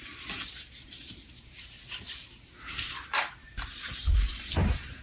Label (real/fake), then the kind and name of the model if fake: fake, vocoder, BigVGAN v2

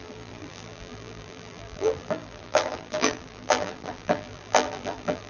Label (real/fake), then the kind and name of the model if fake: fake, vocoder, BigVGAN v2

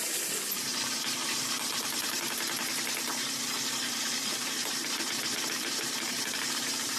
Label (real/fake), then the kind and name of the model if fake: fake, vocoder, BigVGAN v2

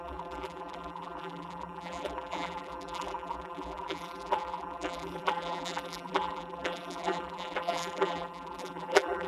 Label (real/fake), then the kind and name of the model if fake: fake, vocoder, BigVGAN v2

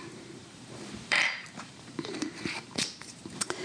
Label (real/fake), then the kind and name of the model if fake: fake, vocoder, BigVGAN v2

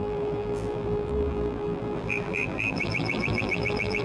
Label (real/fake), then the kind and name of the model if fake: fake, vocoder, BigVGAN v2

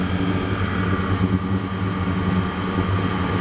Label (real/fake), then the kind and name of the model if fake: real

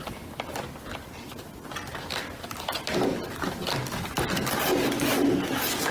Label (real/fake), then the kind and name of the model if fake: real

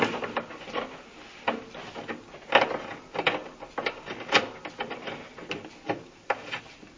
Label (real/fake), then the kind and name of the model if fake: real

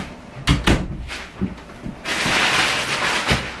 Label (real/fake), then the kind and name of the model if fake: real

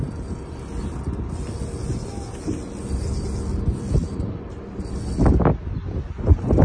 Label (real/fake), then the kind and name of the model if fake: real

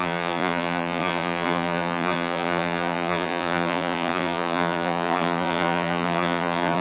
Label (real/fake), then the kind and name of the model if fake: fake, vocoder, BigVGAN v2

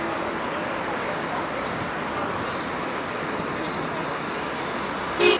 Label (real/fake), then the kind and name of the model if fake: fake, vocoder, BigVGAN v2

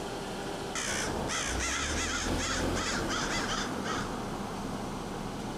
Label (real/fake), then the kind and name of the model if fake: real